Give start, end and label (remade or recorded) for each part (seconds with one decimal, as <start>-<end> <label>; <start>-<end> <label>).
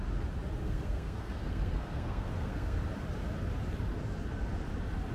0.0-0.6 recorded; 0.6-2.8 remade; 2.8-5.1 recorded